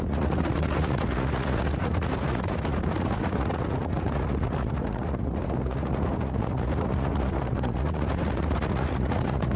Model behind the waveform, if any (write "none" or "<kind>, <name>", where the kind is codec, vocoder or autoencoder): vocoder, Vocos